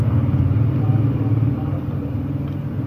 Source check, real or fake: real